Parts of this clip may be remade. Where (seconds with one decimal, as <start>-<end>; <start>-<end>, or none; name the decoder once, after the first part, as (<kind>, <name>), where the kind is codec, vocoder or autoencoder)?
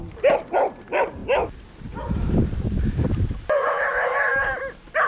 none